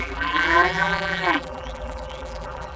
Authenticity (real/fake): fake